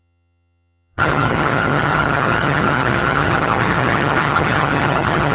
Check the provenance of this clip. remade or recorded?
remade